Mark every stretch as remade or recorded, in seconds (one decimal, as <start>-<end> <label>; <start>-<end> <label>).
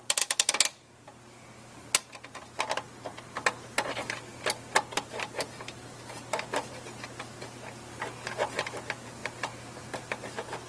0.0-10.7 recorded